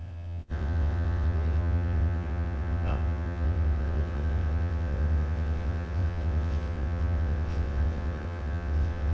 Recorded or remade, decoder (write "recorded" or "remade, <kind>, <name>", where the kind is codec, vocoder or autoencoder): remade, vocoder, WaveNeXt